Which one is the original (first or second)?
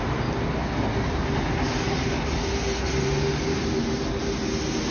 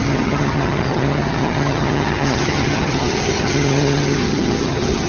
first